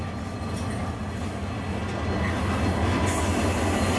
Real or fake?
real